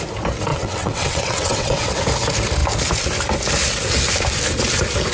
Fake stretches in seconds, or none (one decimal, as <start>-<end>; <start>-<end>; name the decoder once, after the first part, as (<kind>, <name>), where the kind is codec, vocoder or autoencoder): 0.5-2.0 (vocoder, WaveNeXt)